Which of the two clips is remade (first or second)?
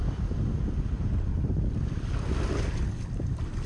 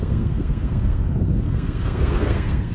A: second